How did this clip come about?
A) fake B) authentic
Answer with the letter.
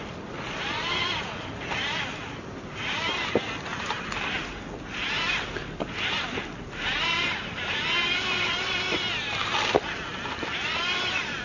A